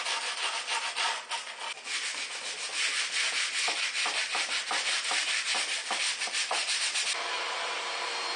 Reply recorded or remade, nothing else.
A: recorded